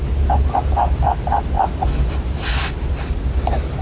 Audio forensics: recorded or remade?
recorded